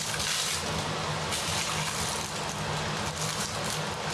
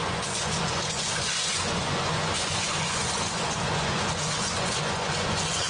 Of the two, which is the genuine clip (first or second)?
first